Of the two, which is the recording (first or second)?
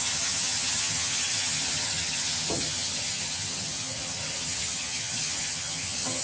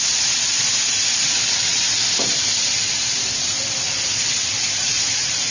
second